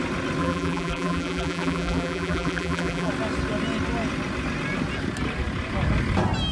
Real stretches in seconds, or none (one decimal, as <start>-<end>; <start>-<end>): 0.0-0.4; 3.1-6.5